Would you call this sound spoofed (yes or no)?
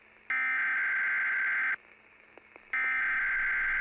no